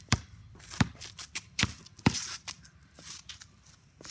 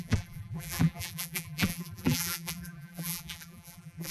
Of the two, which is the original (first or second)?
first